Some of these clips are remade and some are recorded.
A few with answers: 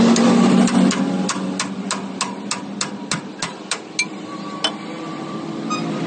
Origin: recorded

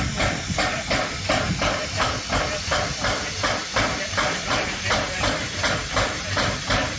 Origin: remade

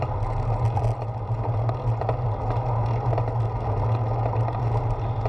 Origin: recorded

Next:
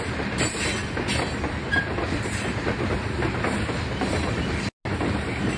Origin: recorded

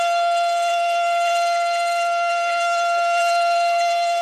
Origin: remade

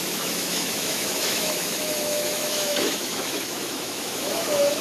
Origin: remade